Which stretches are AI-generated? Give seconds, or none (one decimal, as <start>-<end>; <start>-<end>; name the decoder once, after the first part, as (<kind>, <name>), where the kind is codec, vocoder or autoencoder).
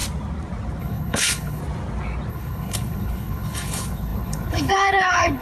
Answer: 0.8-1.6 (codec, HILCodec); 2.3-5.4